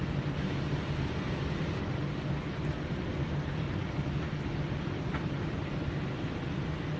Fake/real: real